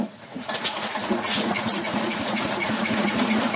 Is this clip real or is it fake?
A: fake